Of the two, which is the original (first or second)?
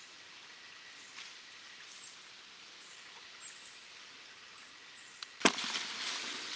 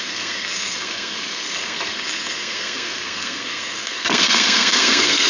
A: first